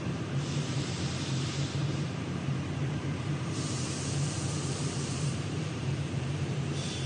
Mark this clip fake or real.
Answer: fake